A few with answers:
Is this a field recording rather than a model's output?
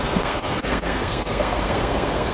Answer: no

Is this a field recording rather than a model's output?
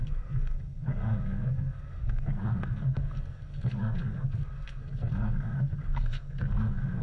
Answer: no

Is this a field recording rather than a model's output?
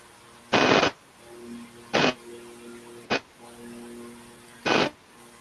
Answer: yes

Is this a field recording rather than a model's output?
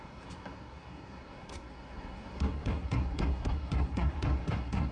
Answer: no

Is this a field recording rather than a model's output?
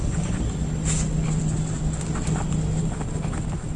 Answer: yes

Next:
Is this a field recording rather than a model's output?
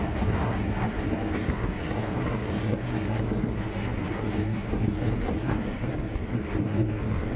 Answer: no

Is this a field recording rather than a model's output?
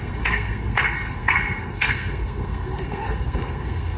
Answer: no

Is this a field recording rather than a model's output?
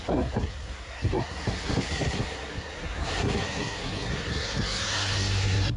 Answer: no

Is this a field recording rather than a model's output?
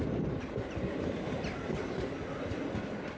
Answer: yes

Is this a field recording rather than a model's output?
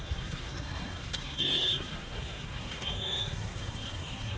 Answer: no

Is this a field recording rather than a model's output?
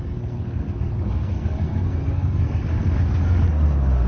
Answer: no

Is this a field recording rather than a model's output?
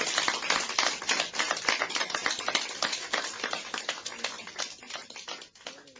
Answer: yes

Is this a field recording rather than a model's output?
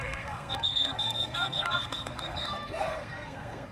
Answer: no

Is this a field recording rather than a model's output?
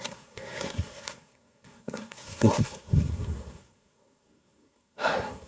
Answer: no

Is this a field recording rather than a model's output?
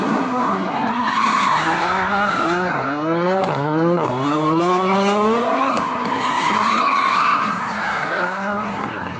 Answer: no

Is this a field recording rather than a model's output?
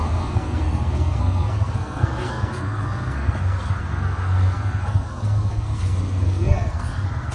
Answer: no